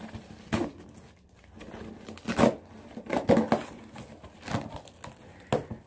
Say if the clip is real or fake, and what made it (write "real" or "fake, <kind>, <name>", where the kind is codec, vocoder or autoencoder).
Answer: real